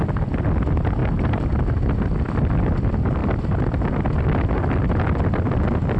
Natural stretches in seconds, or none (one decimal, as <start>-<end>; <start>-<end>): 0.0-1.0; 1.6-6.0